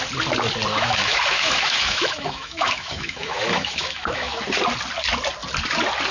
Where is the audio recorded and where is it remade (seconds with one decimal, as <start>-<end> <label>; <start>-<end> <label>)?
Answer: 0.0-0.7 recorded; 0.7-4.4 remade; 4.4-6.1 recorded